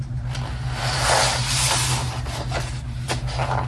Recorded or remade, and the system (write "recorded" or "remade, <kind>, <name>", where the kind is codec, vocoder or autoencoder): recorded